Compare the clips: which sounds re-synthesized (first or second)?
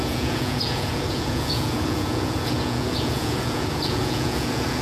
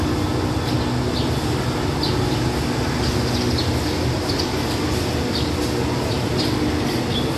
first